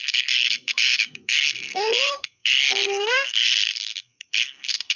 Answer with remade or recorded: remade